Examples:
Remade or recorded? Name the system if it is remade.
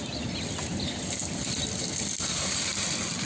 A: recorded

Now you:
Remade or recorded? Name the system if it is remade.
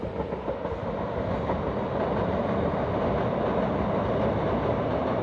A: recorded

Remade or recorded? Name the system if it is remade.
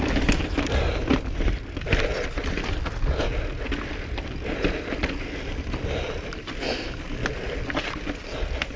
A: recorded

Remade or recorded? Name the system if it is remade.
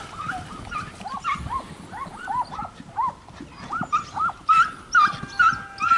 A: recorded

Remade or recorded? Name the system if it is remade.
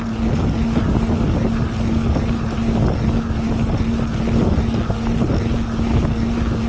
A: recorded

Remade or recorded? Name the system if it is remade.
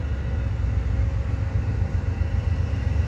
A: recorded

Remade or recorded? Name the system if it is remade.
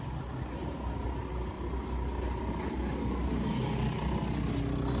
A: recorded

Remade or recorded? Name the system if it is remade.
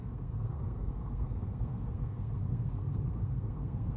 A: remade, codec, SNAC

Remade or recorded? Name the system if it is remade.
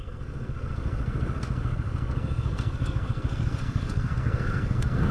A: remade, codec, SNAC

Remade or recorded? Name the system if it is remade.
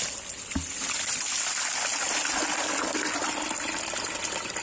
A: recorded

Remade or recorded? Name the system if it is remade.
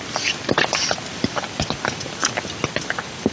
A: recorded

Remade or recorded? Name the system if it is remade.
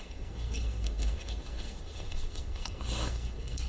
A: remade, codec, SNAC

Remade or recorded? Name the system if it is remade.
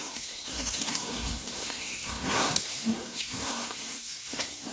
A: remade, codec, SNAC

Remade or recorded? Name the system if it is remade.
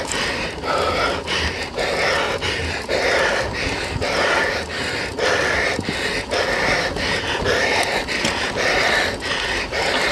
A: recorded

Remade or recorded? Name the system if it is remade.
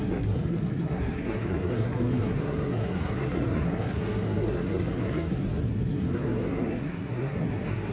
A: remade, codec, SNAC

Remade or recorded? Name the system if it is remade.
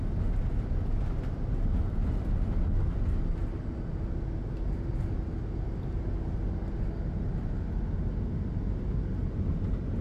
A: recorded